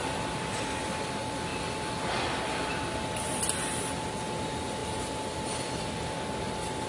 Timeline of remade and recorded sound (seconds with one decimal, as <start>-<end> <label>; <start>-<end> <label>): 0.0-6.9 recorded